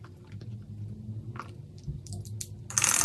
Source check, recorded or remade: recorded